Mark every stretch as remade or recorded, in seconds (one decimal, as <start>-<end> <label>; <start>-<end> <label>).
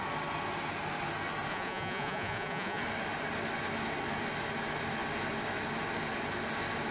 0.0-1.5 recorded; 1.5-2.8 remade; 2.8-6.9 recorded